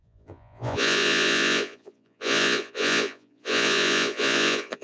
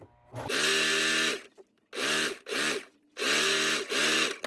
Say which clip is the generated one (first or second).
first